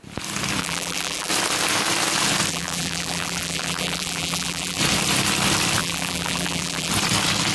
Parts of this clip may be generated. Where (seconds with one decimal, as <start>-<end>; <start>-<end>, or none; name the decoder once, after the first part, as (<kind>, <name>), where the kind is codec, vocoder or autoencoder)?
0.6-1.3 (vocoder, BigVGAN v2); 2.5-4.8; 5.8-6.9